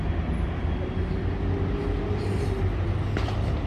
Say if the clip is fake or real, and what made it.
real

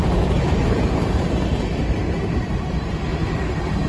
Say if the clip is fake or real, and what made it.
fake, vocoder, BigVGAN v2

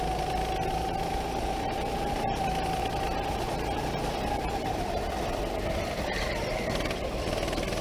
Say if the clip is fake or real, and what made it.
real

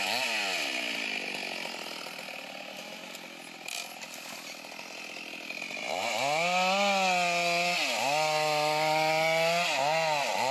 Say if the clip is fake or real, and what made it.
real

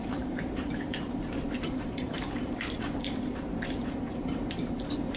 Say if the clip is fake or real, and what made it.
fake, vocoder, BigVGAN v2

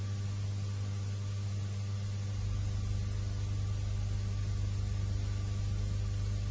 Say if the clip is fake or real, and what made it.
real